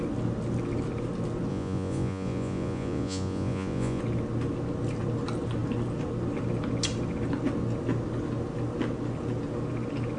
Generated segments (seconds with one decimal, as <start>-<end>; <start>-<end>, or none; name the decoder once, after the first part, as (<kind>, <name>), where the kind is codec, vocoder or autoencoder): 1.5-4.0 (vocoder, Vocos)